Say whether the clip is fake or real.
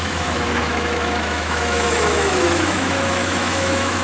fake